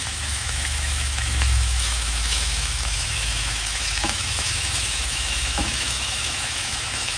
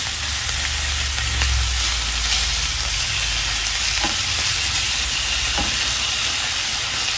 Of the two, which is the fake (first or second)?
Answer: first